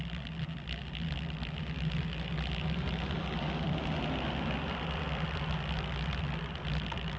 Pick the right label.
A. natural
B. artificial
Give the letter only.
A